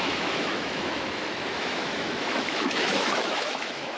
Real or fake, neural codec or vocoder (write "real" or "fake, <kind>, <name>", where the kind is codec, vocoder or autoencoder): fake, autoencoder, DAC-VAE